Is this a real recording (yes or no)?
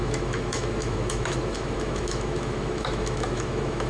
no